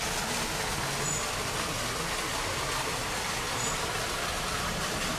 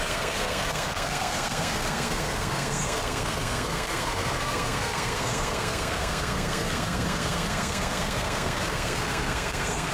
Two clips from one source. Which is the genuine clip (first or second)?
first